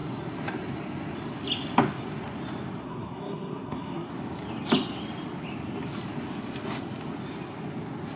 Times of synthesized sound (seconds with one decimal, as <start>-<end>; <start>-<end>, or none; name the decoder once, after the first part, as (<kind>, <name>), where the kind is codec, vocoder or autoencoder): 2.8-4.1 (codec, SNAC)